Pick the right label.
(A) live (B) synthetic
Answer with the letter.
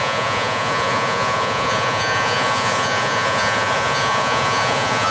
B